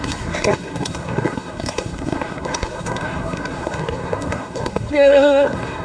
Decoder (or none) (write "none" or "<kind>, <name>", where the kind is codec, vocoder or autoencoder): codec, SNAC